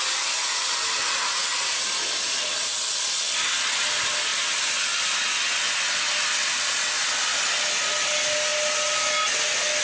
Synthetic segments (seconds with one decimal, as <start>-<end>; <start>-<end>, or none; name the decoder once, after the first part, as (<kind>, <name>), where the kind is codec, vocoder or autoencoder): none